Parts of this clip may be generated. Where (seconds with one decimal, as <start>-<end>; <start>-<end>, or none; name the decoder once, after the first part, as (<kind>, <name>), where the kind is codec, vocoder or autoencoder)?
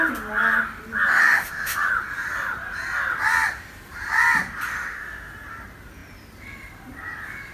1.1-1.9 (autoencoder, DAC-VAE); 4.7-5.3